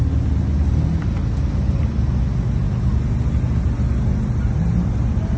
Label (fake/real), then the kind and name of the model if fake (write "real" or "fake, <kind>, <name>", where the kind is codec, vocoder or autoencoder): real